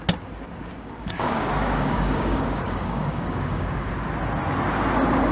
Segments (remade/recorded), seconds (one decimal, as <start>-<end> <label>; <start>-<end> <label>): 0.0-0.7 recorded; 0.7-3.9 remade; 3.9-5.3 recorded